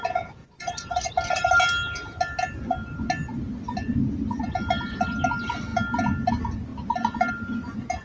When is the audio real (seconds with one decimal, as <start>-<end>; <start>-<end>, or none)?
0.0-0.4; 1.1-8.0